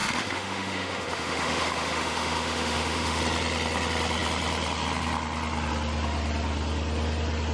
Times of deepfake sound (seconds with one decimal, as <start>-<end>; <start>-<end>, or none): 0.0-3.2